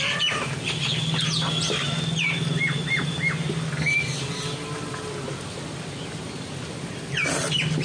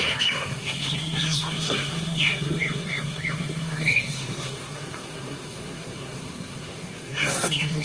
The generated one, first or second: second